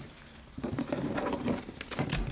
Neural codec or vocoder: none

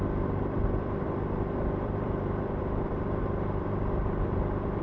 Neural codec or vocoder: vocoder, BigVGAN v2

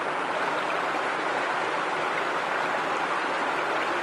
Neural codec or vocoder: none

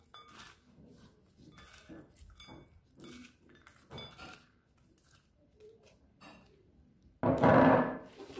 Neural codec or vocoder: none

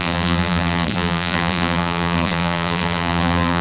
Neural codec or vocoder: vocoder, BigVGAN v2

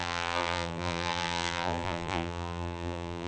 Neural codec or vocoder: vocoder, BigVGAN v2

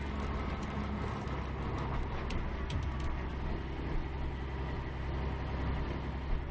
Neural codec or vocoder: none